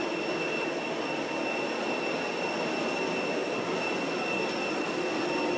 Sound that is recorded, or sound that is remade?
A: recorded